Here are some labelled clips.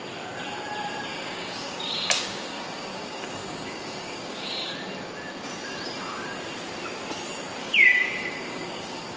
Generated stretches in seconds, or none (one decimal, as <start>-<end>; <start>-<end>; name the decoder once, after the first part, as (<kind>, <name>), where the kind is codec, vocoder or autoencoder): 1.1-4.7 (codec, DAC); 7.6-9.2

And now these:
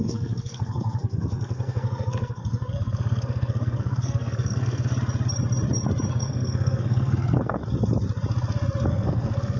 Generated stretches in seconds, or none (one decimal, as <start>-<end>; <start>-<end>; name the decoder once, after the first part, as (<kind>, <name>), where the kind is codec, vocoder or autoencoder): 0.0-4.9 (codec, SNAC); 6.1-7.6; 8.9-9.6

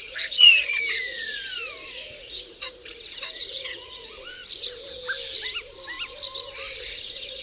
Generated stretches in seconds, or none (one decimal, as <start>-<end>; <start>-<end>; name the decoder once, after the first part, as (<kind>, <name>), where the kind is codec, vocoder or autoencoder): 0.0-4.4 (vocoder, Vocos); 6.8-7.4

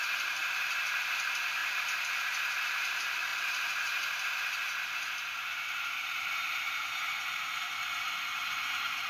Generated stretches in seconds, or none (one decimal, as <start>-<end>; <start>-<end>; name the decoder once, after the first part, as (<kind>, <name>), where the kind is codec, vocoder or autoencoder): 0.0-9.1 (vocoder, BigVGAN v2)

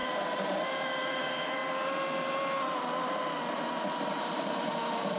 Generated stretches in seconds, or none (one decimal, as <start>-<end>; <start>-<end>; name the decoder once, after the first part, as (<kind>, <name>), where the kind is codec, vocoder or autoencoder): 0.0-1.6 (vocoder, BigVGAN v2); 4.1-5.2

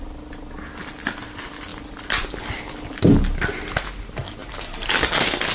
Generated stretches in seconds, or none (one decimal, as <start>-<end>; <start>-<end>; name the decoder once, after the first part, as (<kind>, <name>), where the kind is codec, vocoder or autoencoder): none

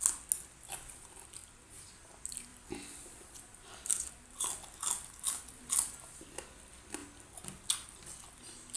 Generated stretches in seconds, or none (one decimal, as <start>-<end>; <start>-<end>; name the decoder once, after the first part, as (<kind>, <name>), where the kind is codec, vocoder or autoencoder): 1.4-1.9 (vocoder, BigVGAN v2); 2.5-4.5